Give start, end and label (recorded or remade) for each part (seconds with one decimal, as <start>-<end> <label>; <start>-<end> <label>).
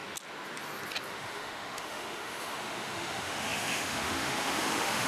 0.0-1.1 recorded; 1.1-5.1 remade